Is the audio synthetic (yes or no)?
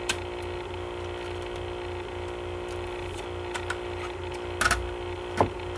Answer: no